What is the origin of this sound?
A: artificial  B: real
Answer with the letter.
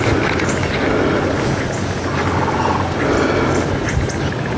B